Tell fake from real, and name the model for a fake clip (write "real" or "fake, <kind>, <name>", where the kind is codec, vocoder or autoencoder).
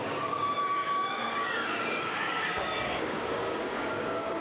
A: fake, codec, DAC